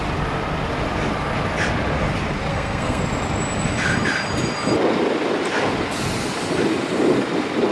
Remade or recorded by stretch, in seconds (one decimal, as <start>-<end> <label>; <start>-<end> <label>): 0.0-2.5 recorded; 2.5-3.0 remade; 3.0-7.7 recorded